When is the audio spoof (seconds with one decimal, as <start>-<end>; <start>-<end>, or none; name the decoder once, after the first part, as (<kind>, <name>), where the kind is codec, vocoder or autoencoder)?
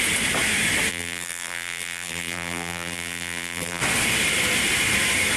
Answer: 0.9-3.8 (vocoder, BigVGAN v2)